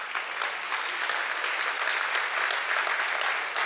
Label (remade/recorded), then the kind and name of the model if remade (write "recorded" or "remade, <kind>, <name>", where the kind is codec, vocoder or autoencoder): recorded